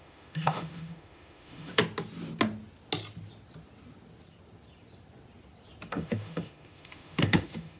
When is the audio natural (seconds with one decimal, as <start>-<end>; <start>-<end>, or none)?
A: 1.8-5.9